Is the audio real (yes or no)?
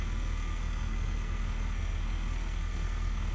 no